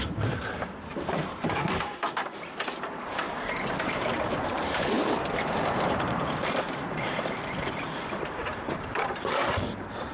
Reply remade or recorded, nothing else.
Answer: remade